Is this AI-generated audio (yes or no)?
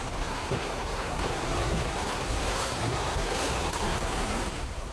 yes